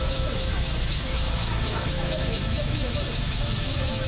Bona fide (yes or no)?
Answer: no